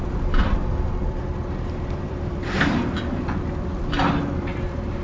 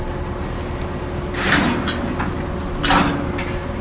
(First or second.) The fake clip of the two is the first